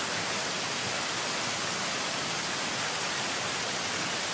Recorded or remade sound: recorded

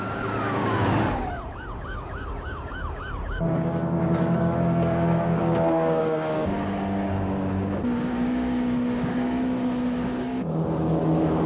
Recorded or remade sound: remade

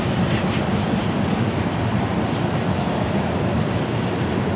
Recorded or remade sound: recorded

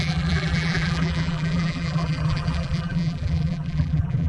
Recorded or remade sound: remade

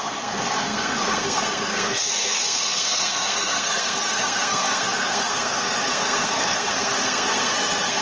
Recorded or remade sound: remade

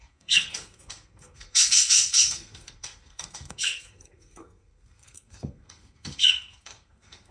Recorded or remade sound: remade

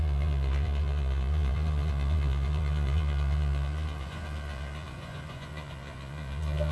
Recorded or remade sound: remade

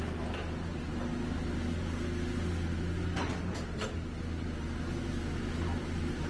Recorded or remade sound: recorded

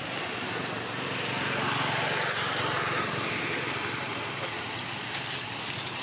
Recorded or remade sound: recorded